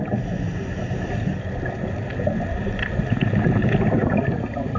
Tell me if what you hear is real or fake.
real